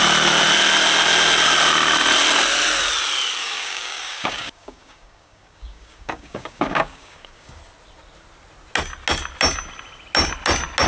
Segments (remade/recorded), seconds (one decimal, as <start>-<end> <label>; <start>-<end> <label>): 0.0-3.4 recorded; 3.4-7.6 remade; 7.6-10.9 recorded